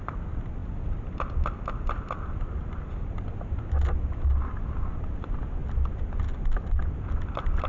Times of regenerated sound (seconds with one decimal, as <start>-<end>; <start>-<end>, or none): none